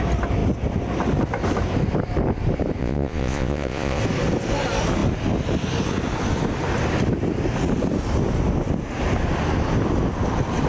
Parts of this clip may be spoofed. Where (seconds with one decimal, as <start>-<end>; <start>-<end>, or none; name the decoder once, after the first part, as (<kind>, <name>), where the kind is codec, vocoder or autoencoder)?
2.8-4.0 (vocoder, Vocos)